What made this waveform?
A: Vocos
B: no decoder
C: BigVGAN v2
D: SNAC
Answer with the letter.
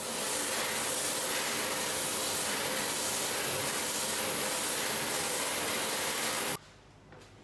B